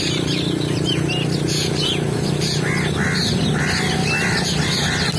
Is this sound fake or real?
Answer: real